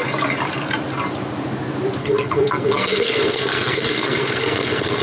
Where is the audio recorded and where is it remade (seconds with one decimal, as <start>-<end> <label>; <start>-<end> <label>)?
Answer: 0.0-2.0 recorded; 2.0-5.0 remade